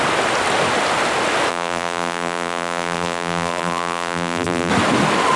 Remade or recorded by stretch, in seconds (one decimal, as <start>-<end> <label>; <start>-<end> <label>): 0.0-1.5 recorded; 1.5-4.7 remade; 4.7-5.4 recorded